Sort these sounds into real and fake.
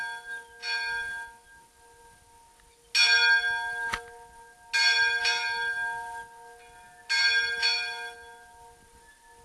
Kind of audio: real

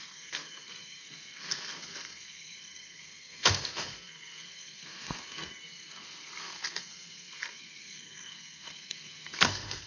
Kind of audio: fake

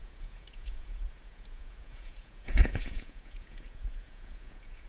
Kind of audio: fake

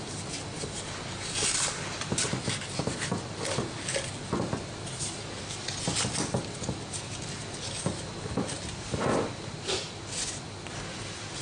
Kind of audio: real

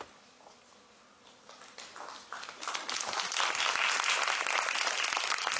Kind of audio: real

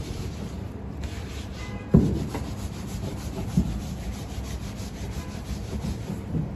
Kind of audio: fake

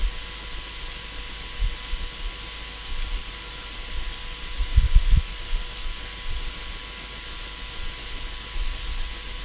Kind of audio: real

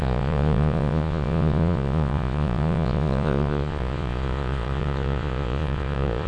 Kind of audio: fake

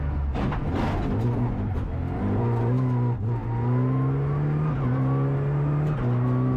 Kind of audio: real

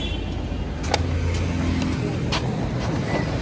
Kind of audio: real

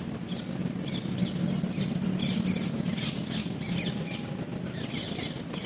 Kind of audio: real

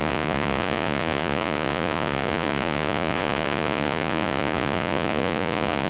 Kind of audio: fake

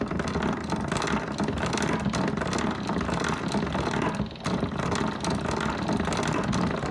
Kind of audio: real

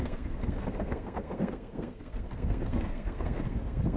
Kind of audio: fake